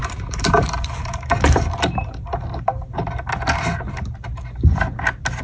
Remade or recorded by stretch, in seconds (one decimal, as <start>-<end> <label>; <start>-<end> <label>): 0.0-3.2 remade; 3.2-5.4 recorded